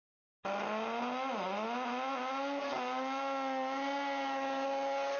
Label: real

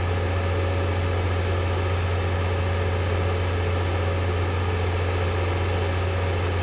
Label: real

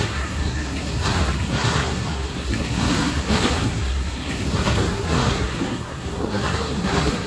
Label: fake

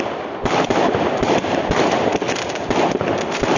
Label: real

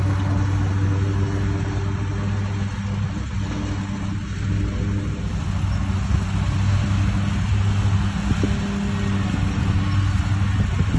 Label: real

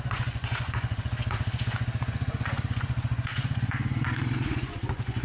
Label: fake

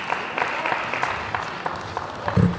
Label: real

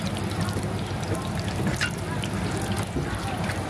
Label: real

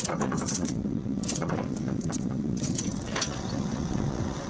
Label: fake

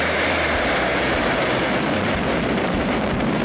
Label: fake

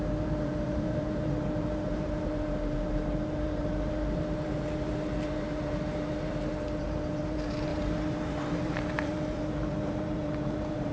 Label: fake